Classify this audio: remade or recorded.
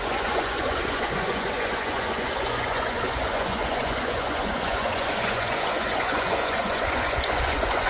remade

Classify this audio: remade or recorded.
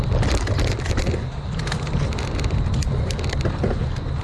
recorded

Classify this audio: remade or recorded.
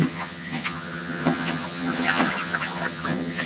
remade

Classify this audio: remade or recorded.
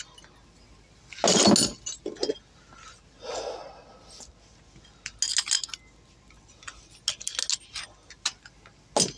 recorded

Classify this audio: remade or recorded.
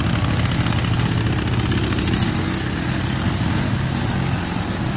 recorded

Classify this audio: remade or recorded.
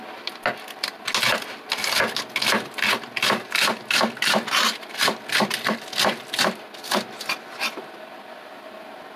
recorded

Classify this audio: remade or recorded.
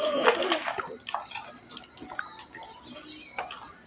recorded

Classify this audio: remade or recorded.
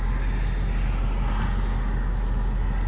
recorded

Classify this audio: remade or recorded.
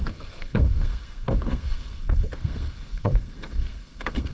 remade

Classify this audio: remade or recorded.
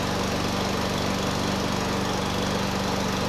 recorded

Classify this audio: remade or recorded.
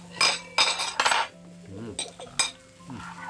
recorded